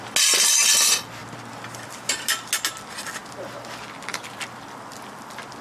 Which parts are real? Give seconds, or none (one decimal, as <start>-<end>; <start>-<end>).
0.0-5.6